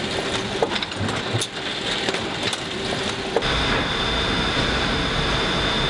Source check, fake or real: real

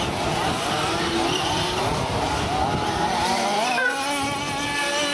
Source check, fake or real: real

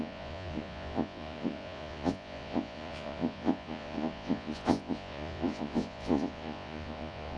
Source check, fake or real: fake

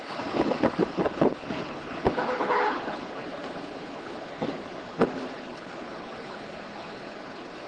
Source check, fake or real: fake